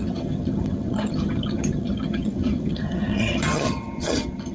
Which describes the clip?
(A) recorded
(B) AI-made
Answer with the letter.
B